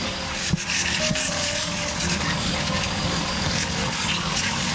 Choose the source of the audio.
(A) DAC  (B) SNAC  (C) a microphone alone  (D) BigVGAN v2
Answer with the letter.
A